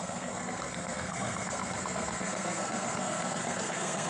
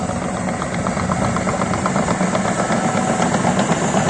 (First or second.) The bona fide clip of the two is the second